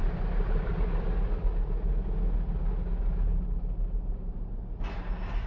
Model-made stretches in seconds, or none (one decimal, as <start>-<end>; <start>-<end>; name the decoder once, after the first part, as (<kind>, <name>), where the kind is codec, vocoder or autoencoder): none

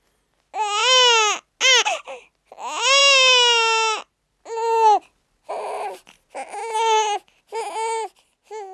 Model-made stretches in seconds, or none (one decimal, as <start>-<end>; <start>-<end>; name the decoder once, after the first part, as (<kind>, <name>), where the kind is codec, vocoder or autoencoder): none

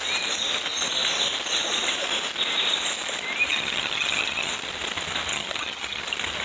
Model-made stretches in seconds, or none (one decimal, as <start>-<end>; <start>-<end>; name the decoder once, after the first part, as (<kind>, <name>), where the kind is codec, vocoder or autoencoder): 3.5-4.5 (vocoder, HiFi-GAN); 5.3-6.0

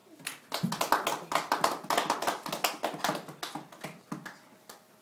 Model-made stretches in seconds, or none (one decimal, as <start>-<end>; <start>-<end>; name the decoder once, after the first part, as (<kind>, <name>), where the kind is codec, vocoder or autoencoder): none

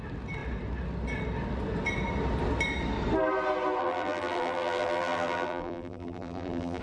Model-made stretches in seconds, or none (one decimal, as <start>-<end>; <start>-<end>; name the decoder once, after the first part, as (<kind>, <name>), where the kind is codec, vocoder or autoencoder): 3.8-6.8 (vocoder, BigVGAN v2)